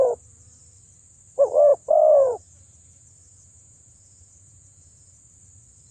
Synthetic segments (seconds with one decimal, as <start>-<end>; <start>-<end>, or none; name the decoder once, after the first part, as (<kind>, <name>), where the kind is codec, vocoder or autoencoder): 1.7-5.2 (vocoder, Vocos)